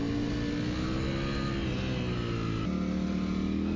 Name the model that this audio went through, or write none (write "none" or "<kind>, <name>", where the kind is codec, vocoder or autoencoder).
none